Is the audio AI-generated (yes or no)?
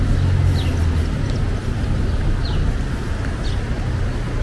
no